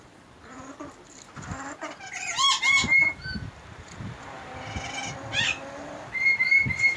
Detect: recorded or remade remade